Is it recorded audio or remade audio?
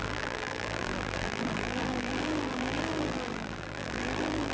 remade